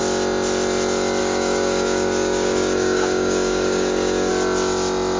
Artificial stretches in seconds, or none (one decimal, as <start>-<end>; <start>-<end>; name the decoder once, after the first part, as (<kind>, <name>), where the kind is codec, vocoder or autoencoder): 1.2-4.3 (codec, DAC)